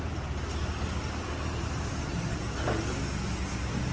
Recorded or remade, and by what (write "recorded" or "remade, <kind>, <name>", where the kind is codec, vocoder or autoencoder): recorded